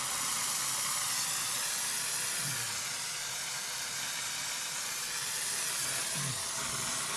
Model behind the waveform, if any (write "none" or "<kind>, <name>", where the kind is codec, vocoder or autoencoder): none